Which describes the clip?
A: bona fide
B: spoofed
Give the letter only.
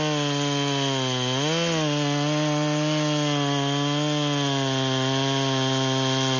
A